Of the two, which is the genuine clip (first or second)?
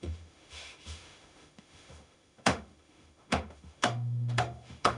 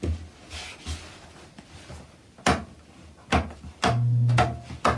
second